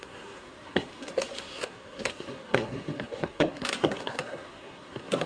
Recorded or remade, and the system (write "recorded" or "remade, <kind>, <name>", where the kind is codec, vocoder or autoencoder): remade, codec, SNAC